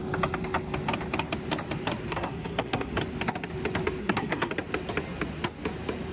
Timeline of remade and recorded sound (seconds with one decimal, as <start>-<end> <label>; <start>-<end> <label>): 0.0-2.1 recorded; 2.1-3.0 remade; 3.0-4.0 recorded; 4.0-4.5 remade; 4.5-6.1 recorded